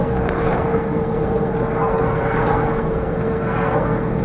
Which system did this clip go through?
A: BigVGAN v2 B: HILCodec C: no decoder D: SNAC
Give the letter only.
D